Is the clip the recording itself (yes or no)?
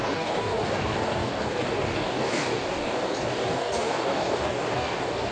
no